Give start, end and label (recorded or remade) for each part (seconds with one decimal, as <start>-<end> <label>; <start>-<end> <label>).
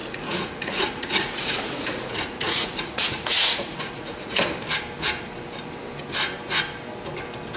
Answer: 0.0-4.4 remade; 4.4-7.6 recorded